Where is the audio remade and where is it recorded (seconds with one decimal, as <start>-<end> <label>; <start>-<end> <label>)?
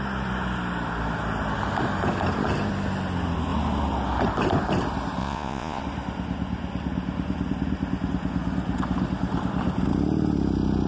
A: 0.0-5.2 recorded; 5.2-5.8 remade; 5.8-10.9 recorded